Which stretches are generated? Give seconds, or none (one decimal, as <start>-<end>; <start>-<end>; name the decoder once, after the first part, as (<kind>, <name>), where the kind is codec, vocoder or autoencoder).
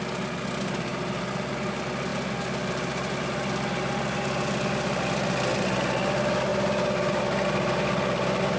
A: none